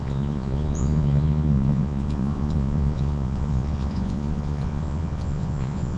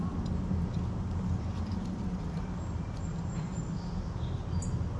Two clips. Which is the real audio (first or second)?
second